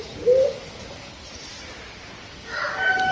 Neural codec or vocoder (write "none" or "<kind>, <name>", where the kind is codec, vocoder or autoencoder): none